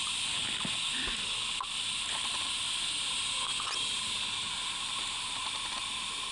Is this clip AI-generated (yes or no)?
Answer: no